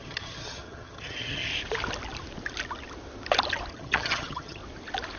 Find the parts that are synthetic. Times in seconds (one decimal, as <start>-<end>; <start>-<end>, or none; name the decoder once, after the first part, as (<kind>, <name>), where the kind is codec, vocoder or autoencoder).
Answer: 0.0-1.5 (vocoder, HiFi-GAN); 3.7-4.6